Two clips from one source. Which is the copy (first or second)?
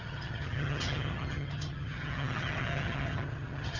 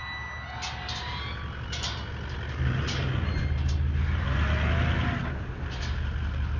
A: first